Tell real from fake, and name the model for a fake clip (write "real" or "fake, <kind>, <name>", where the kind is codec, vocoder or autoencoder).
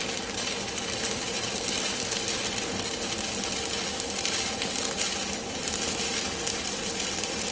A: real